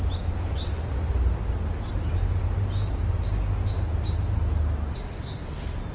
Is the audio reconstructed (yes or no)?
no